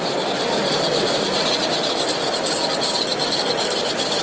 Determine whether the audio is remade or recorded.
recorded